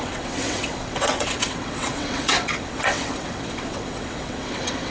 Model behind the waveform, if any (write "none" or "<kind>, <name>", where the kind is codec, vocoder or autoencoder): vocoder, WaveNeXt